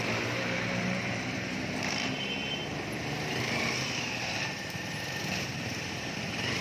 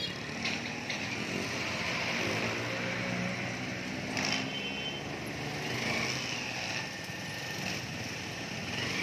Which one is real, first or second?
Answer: second